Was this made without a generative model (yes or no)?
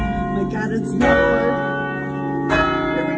yes